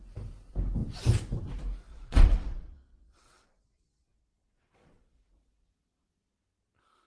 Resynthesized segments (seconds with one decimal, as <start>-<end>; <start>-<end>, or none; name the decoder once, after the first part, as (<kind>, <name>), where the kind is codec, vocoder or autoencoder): 1.9-6.2 (vocoder, WaveNeXt)